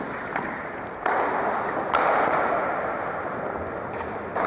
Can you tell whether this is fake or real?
real